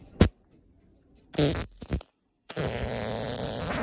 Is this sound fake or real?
real